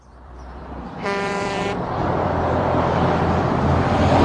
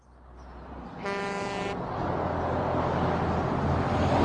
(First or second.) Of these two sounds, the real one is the second